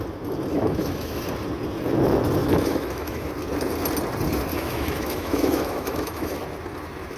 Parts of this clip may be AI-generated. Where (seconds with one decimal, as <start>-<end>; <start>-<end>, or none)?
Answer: 0.5-1.2; 2.4-3.3; 4.5-6.4